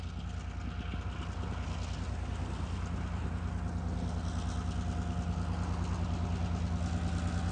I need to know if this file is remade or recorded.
recorded